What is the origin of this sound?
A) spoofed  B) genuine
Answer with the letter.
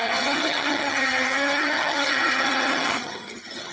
A